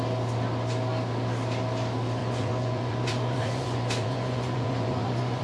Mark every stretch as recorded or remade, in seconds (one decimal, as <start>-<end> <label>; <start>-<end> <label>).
0.0-2.2 recorded; 2.2-5.4 remade